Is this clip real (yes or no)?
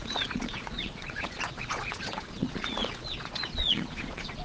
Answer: no